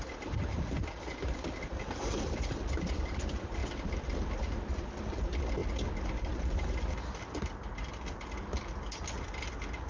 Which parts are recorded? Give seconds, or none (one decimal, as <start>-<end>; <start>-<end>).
0.0-9.9